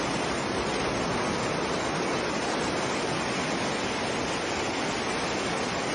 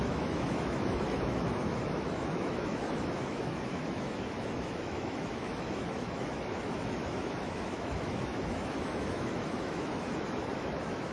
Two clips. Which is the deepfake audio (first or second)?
second